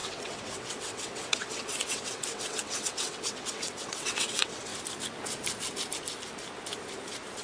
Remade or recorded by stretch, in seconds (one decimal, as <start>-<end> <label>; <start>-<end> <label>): 0.0-4.7 remade; 4.7-7.4 recorded